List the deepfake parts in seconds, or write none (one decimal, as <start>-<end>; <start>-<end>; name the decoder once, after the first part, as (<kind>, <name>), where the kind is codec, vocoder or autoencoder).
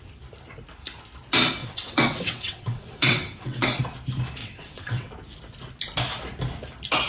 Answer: 1.6-3.8 (vocoder, WaveNeXt); 4.4-5.1